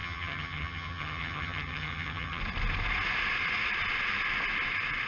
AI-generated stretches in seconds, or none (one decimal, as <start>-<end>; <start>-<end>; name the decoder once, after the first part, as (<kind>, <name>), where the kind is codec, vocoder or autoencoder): 0.0-2.4 (vocoder, HiFi-GAN)